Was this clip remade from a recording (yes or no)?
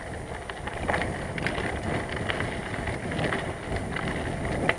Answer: no